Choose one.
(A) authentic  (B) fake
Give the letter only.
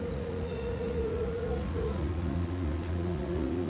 B